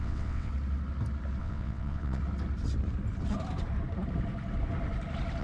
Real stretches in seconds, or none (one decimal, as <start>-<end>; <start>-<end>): 0.5-1.4; 2.2-5.4